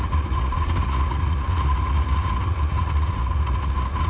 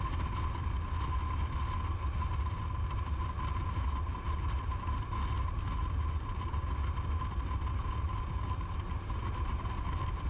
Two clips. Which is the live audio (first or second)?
second